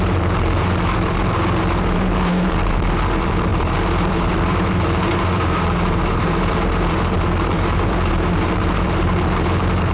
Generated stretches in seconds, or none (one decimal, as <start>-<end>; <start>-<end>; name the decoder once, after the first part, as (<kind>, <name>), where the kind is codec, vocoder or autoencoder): 0.0-9.9 (vocoder, BigVGAN v2)